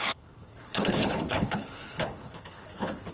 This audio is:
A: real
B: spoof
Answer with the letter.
B